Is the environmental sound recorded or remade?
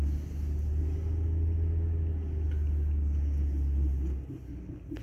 recorded